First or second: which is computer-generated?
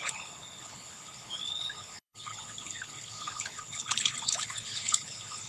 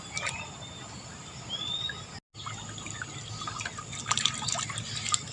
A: first